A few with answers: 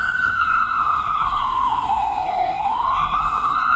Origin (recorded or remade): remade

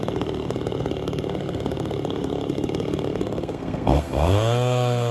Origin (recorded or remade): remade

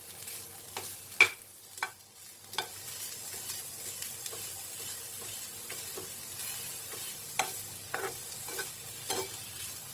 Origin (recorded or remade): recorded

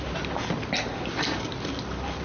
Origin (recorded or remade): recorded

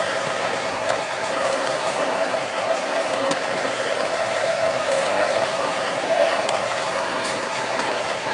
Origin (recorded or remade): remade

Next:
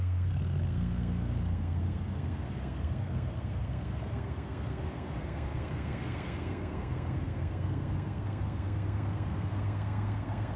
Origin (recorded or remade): remade